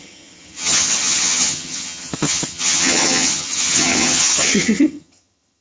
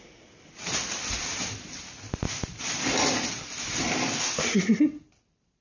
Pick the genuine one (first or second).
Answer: second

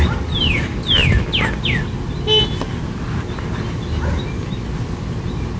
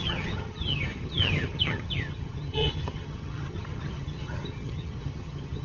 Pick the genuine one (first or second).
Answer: first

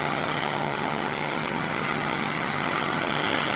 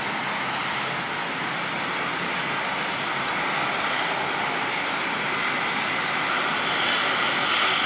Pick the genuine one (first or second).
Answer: second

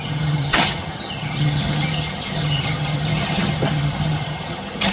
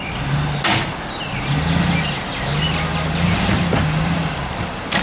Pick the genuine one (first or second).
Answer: second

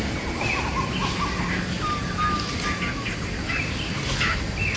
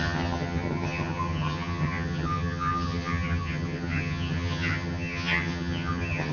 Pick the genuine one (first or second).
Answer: first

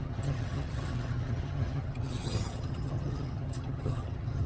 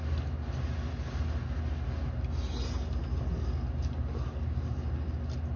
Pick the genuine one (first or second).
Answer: second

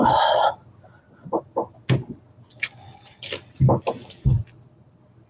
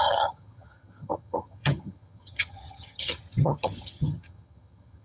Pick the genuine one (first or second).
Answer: first